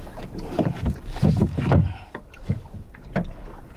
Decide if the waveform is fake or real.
fake